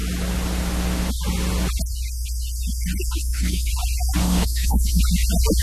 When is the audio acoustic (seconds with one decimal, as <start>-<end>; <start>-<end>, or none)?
0.0-3.2; 3.7-4.2; 5.0-5.6